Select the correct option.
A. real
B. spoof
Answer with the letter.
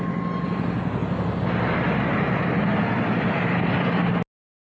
A